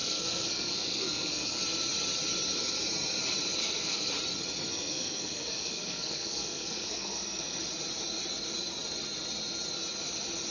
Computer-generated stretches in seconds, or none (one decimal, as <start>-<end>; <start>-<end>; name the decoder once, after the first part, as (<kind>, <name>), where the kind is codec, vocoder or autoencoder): 0.0-1.6 (codec, SNAC); 3.6-4.1; 4.7-7.6